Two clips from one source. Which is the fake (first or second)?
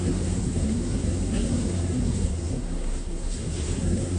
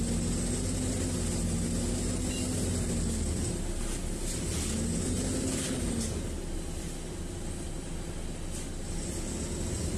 first